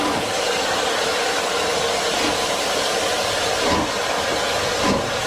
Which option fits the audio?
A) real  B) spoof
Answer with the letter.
A